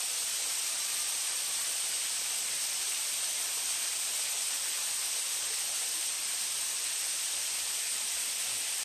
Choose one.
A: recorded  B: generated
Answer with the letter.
A